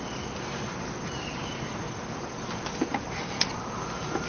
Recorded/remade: recorded